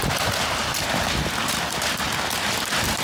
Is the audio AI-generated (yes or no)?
no